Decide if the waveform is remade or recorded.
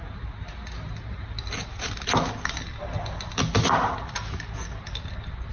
recorded